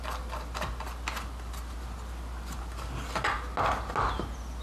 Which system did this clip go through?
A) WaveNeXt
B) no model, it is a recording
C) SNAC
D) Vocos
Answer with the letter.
B